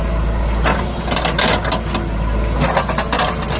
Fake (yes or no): no